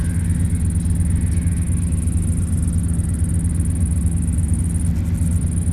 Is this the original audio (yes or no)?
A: yes